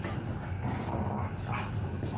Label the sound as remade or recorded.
recorded